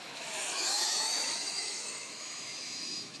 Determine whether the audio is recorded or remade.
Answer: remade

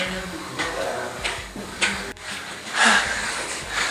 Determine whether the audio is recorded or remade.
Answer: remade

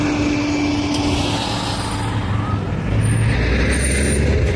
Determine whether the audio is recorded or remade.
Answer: recorded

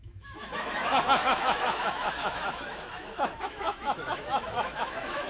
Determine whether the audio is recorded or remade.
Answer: remade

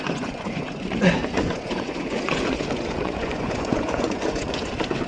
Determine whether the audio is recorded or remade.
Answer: remade